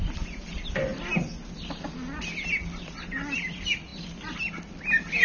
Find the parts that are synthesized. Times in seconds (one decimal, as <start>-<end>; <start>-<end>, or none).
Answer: none